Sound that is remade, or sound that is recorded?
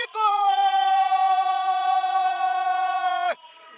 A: remade